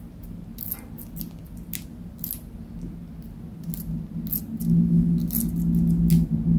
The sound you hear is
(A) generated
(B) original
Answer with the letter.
B